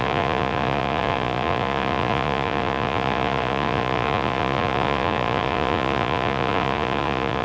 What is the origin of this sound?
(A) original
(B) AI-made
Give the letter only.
B